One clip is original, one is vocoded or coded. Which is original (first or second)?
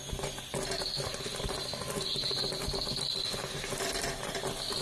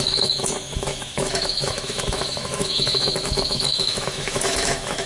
first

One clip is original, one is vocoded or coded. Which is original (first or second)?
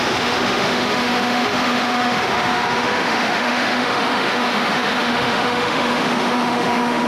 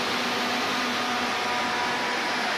second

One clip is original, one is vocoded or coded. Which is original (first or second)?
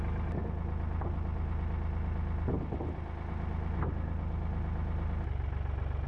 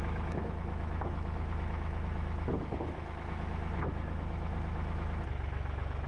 first